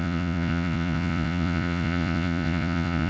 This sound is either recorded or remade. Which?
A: remade